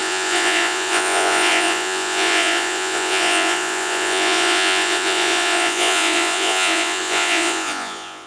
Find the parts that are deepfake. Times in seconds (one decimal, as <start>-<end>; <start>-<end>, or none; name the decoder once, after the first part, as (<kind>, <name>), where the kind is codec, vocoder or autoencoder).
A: 0.0-8.3 (vocoder, Vocos)